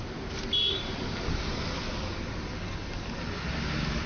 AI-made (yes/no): no